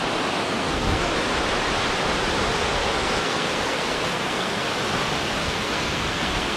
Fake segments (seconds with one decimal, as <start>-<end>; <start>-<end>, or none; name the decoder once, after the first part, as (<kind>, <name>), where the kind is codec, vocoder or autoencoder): 0.4-1.1 (codec, SNAC); 2.6-4.7; 5.4-6.6